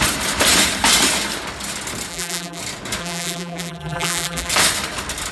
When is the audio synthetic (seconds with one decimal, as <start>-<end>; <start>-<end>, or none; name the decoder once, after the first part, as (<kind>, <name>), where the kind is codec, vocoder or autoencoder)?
2.1-2.6 (vocoder, BigVGAN v2); 3.0-4.5